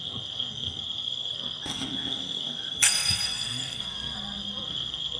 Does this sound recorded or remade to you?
remade